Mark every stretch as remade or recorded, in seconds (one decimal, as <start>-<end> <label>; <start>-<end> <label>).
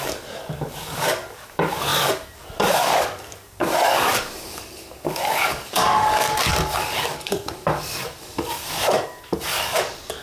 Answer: 0.0-10.2 remade